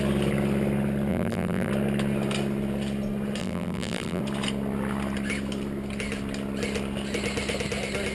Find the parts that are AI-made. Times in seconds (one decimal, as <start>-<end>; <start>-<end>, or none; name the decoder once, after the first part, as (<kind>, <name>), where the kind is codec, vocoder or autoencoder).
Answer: 1.1-1.7 (vocoder, BigVGAN v2); 3.4-4.2